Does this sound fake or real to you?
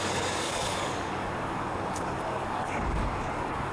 fake